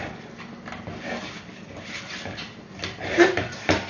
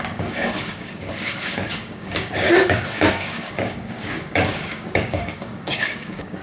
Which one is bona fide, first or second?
first